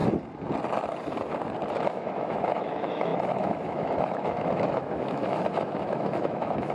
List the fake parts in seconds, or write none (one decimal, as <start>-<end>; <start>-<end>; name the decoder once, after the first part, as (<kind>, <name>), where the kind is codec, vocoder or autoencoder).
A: 1.7-6.7 (autoencoder, DAC-VAE)